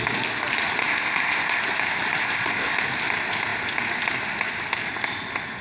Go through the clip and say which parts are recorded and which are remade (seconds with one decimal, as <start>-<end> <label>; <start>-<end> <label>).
0.0-0.8 recorded; 0.8-1.6 remade; 1.6-2.2 recorded; 2.2-2.8 remade; 2.8-5.6 recorded